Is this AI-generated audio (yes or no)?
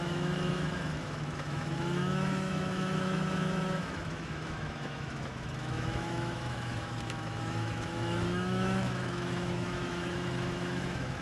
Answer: yes